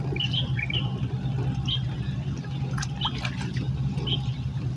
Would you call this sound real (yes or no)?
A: yes